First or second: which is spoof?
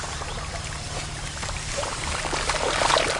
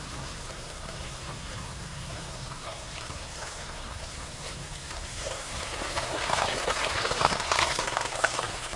second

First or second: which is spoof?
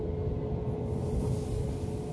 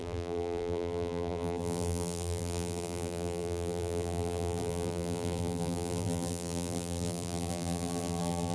second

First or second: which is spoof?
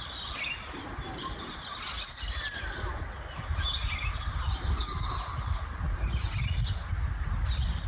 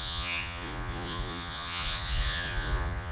second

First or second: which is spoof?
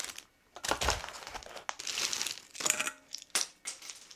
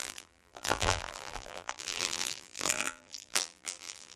second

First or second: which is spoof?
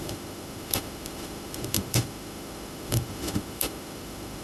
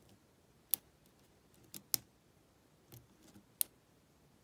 first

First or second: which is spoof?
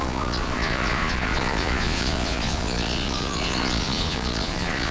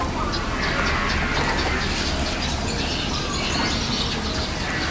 first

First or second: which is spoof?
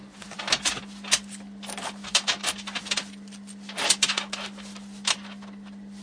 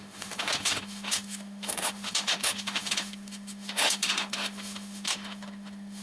second